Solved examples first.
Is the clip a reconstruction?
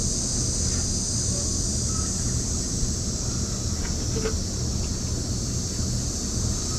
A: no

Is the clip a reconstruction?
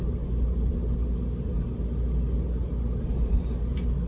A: no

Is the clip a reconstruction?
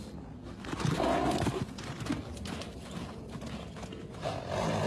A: no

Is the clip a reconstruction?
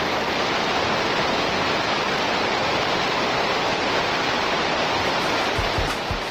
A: no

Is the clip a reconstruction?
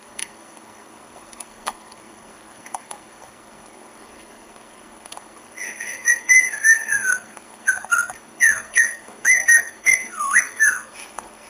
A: yes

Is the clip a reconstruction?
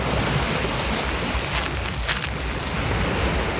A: no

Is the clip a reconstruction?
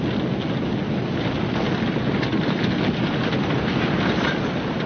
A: no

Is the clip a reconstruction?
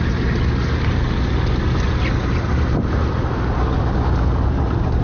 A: no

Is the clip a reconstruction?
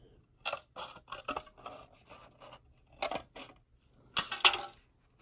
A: no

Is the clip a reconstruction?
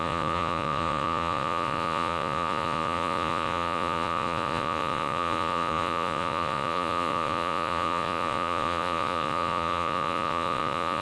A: yes